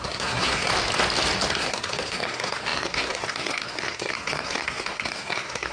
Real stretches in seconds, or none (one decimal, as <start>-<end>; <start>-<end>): 0.7-1.5